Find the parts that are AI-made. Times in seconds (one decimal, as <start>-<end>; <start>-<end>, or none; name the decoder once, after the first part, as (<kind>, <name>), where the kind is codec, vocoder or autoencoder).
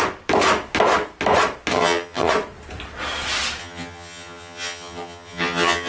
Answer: 1.7-2.3 (vocoder, HiFi-GAN); 3.6-5.9